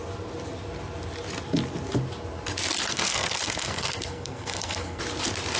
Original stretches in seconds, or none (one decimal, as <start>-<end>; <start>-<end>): 0.0-2.8; 5.0-5.6